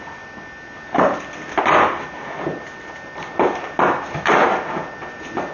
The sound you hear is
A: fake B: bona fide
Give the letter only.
B